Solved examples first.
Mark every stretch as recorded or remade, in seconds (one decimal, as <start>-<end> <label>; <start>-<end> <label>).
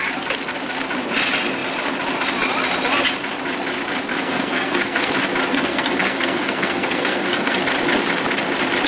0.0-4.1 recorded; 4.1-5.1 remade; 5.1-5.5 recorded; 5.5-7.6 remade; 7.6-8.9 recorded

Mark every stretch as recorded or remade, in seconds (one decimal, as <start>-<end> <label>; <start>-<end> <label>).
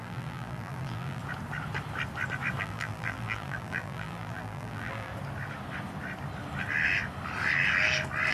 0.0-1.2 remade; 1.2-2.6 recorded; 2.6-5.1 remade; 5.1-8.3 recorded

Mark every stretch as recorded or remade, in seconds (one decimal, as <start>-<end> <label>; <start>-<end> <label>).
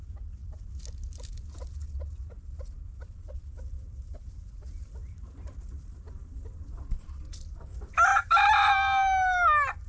0.0-5.0 recorded; 5.0-5.6 remade; 5.6-8.1 recorded; 8.1-8.7 remade; 8.7-9.9 recorded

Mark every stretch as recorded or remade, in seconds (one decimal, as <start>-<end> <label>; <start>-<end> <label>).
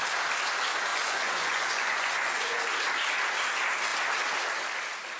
0.0-0.9 recorded; 0.9-2.6 remade; 2.6-5.2 recorded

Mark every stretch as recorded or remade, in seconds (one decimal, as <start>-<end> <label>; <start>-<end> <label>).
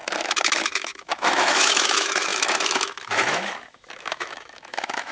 0.0-5.1 remade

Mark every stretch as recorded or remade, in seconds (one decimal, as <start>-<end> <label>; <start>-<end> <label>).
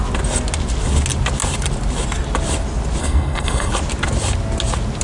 0.0-3.0 recorded; 3.0-3.7 remade; 3.7-5.0 recorded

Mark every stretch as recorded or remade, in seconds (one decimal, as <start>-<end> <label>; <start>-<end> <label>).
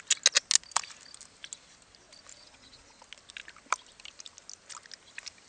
0.0-2.3 recorded; 2.3-3.0 remade; 3.0-5.5 recorded